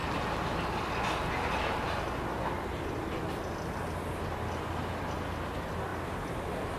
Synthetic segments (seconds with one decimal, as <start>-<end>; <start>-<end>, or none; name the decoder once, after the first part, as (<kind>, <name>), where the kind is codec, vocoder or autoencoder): none